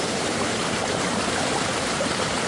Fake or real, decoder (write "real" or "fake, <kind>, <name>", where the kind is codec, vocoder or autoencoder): fake, vocoder, BigVGAN v2